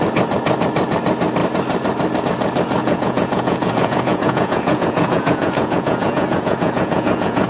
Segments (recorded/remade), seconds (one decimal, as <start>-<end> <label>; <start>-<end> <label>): 0.0-2.8 recorded; 2.8-7.5 remade